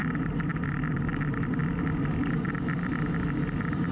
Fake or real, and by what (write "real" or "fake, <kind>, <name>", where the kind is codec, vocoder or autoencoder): real